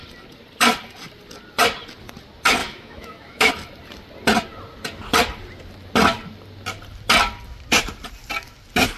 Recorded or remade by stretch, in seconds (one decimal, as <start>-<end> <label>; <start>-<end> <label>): 0.0-2.6 recorded; 2.6-3.5 remade; 3.5-9.0 recorded